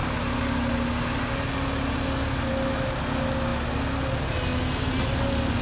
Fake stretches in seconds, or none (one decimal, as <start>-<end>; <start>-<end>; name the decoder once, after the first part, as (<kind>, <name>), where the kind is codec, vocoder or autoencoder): none